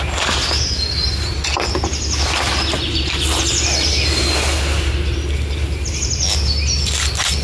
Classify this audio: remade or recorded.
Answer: recorded